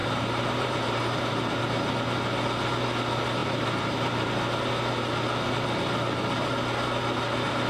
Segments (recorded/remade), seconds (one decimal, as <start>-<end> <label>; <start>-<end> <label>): 0.0-1.6 remade; 1.6-3.4 recorded; 3.4-4.3 remade; 4.3-7.7 recorded